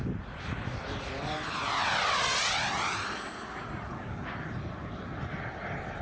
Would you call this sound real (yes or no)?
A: yes